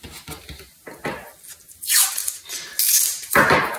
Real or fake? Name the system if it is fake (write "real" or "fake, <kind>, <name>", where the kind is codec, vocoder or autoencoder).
real